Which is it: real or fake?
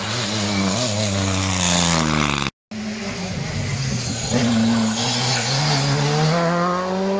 real